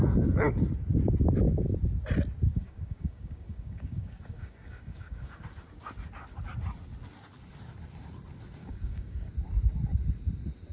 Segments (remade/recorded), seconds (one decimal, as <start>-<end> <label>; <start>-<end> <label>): 0.0-2.5 recorded; 2.5-5.4 remade; 5.4-8.6 recorded; 8.6-9.3 remade; 9.3-10.7 recorded

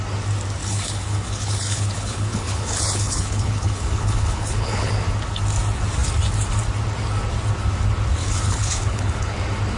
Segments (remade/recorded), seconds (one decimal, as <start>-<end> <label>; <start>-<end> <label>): 0.0-0.6 recorded; 0.6-4.9 remade; 4.9-8.2 recorded; 8.2-9.4 remade; 9.4-9.8 recorded

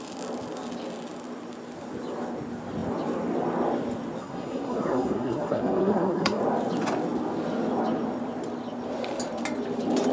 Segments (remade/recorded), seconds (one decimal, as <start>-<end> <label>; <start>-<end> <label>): 0.0-4.2 recorded; 4.2-6.4 remade; 6.4-10.1 recorded

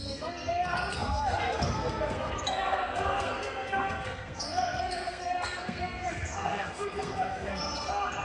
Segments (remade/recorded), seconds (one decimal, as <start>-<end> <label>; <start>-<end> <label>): 0.0-8.2 remade

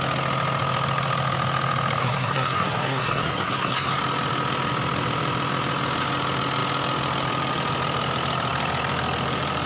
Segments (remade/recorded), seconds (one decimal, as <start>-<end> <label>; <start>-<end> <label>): 0.0-2.0 recorded; 2.0-4.0 remade; 4.0-9.7 recorded

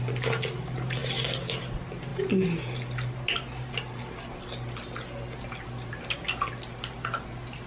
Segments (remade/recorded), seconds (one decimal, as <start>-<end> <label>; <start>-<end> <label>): 0.0-7.7 recorded

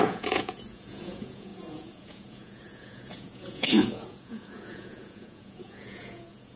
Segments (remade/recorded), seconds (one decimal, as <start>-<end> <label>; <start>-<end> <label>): 0.0-6.6 remade

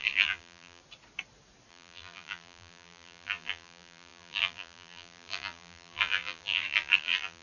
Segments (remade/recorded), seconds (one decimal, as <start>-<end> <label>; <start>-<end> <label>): 0.0-0.8 remade; 0.8-1.7 recorded; 1.7-7.4 remade